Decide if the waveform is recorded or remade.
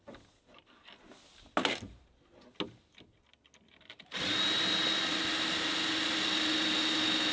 recorded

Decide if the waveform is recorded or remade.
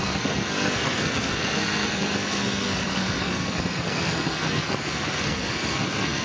remade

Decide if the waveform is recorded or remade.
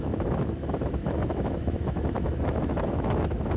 remade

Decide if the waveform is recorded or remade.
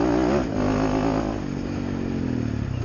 recorded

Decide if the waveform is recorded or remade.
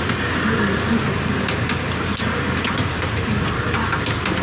recorded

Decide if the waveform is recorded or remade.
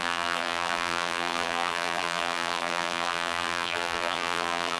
remade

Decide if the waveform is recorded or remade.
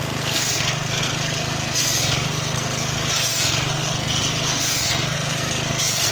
remade